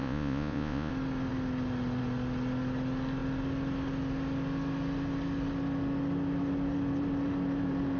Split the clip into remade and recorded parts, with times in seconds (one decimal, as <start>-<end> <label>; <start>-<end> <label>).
0.0-0.9 remade; 0.9-8.0 recorded